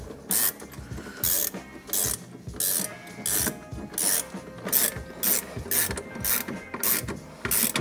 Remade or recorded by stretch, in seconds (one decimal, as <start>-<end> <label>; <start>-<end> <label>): 0.0-7.8 recorded